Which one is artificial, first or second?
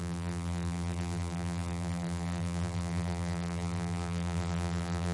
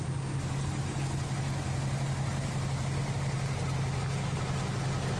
first